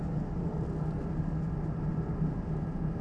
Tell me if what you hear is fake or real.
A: real